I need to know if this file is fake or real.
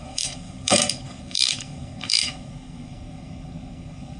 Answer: fake